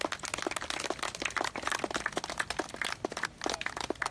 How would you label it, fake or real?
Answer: real